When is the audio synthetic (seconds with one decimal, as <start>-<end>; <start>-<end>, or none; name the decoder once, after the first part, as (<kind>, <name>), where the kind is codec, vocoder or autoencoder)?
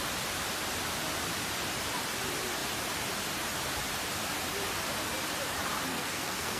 5.9-6.6 (codec, SNAC)